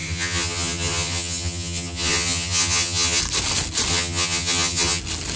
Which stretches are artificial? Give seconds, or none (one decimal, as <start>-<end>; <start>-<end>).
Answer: 0.0-3.2; 3.9-5.0